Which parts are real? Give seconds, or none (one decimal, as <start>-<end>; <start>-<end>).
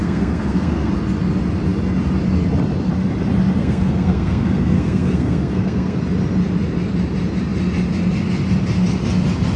0.9-3.6; 6.0-9.6